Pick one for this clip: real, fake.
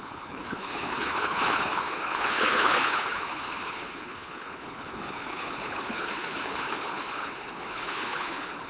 fake